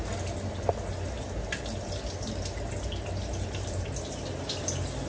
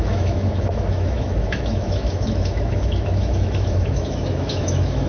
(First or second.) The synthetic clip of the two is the second